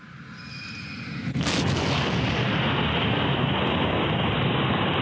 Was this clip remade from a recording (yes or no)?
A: no